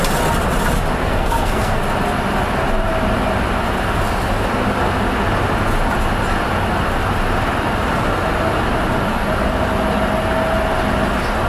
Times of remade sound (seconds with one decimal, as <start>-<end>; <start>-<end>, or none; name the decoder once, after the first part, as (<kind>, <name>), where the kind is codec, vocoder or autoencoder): 1.0-1.8 (codec, SNAC)